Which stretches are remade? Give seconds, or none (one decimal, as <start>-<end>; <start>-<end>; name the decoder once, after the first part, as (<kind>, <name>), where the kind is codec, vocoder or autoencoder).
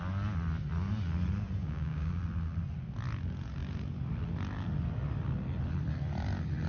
1.6-2.2 (codec, DAC)